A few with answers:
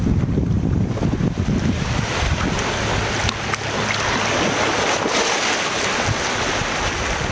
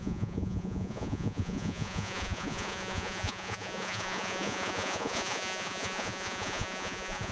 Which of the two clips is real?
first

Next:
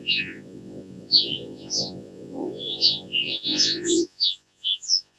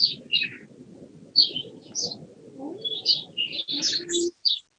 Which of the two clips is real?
second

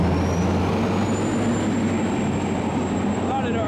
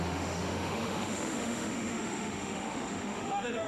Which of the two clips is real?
first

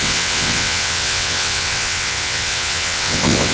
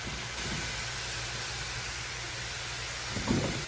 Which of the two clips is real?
second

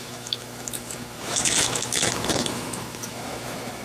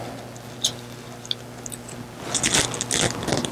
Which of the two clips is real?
second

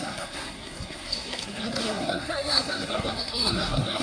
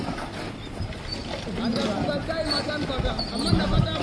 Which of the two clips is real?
second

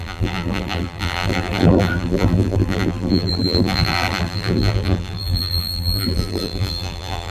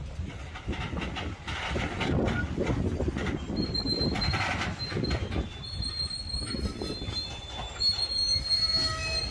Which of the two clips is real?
second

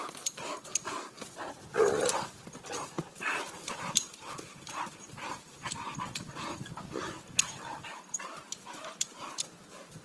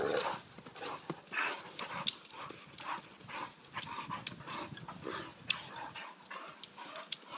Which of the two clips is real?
second